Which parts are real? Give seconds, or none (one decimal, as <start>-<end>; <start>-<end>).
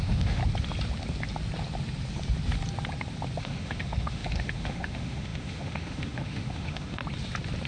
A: 0.4-3.4; 7.0-7.7